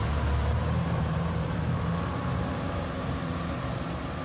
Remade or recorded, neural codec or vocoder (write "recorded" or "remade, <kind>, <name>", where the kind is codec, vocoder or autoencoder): remade, vocoder, BigVGAN v2